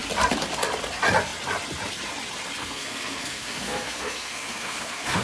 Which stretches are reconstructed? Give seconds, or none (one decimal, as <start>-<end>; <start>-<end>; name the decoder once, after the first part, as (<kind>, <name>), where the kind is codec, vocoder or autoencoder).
2.6-5.2 (codec, SNAC)